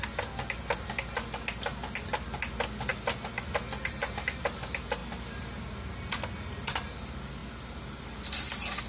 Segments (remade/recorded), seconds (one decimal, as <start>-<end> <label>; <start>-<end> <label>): 0.0-8.9 recorded